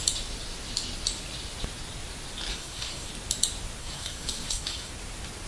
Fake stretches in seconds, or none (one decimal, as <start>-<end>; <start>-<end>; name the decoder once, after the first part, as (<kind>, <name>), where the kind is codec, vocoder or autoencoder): 2.5-3.1 (codec, SNAC); 3.8-4.9